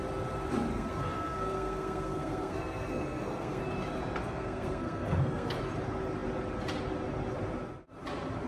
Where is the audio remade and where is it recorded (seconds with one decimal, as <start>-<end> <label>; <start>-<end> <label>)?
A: 0.0-0.7 recorded; 0.7-3.6 remade; 3.6-4.2 recorded; 4.2-5.6 remade; 5.6-8.5 recorded